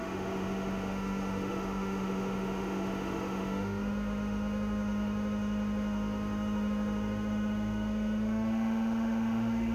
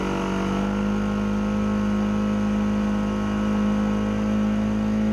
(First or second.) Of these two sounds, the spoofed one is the first